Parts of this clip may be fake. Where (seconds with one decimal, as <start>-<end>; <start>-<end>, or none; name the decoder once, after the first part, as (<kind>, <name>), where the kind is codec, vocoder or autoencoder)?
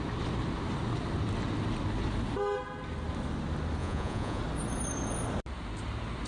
3.8-4.4 (vocoder, Vocos)